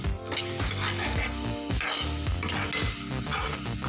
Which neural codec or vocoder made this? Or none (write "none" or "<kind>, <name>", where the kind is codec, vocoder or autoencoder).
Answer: none